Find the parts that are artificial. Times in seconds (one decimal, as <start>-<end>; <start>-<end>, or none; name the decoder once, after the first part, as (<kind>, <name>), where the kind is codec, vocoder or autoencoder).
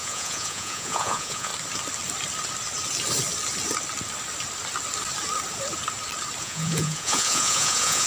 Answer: 0.0-1.5 (vocoder, Vocos); 6.4-8.1